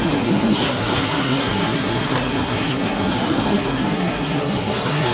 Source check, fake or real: fake